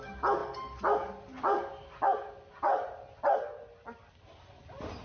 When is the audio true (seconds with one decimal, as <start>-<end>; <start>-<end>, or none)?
0.0-5.0